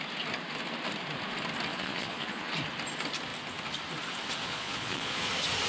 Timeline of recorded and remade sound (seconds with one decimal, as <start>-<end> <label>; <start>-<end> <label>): 0.0-1.7 recorded; 1.7-2.5 remade; 2.5-4.4 recorded; 4.4-5.3 remade; 5.3-5.7 recorded